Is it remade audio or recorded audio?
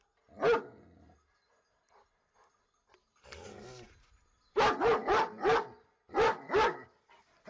recorded